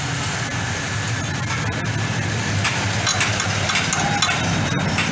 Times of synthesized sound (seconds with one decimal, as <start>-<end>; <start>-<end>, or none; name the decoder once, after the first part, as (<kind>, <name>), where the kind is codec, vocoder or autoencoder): none